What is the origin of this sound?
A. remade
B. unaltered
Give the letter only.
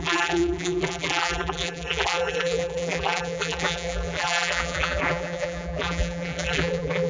A